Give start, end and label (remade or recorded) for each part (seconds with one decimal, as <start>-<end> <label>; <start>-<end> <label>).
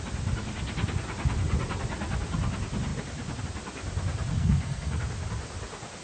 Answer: 0.0-4.3 recorded; 4.3-5.0 remade; 5.0-6.0 recorded